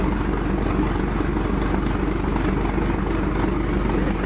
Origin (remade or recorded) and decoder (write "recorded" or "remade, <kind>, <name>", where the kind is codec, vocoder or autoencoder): recorded